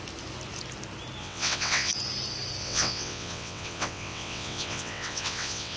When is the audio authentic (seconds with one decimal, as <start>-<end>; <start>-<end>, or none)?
0.0-1.2; 1.9-2.6